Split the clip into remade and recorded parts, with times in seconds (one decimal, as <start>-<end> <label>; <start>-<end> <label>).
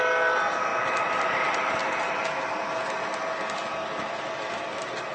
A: 0.0-0.7 recorded; 0.7-1.3 remade; 1.3-5.1 recorded